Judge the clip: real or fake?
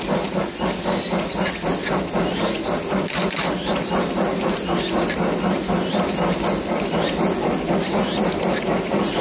real